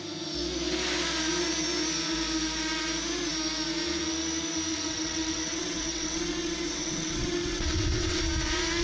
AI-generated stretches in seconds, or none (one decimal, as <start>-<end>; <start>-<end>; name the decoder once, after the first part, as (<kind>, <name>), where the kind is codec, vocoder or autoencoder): 4.7-8.2 (vocoder, WaveNeXt)